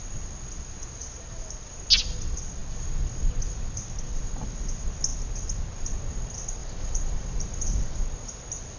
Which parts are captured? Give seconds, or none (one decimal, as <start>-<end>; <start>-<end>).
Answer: 0.0-1.0; 1.7-6.6; 8.0-8.8